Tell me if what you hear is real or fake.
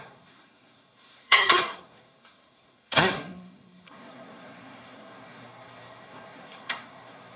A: fake